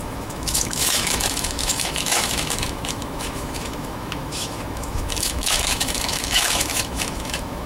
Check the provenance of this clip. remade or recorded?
remade